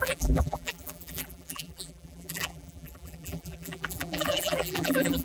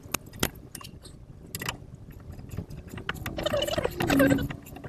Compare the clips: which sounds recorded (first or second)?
second